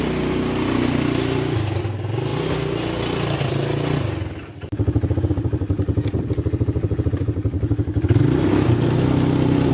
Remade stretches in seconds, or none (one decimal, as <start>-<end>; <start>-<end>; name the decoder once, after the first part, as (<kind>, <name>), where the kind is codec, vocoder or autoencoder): none